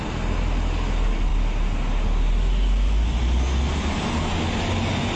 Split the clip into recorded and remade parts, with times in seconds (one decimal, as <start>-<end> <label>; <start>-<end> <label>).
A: 0.0-5.2 recorded